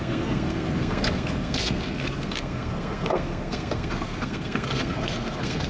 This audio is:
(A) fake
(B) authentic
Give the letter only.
A